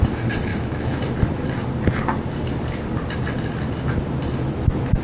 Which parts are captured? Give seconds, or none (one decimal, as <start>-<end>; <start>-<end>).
0.0-0.5; 1.0-5.0